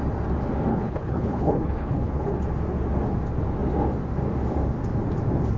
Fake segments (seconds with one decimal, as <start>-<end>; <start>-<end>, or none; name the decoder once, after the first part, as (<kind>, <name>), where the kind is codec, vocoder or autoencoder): 0.7-2.4 (codec, HILCodec)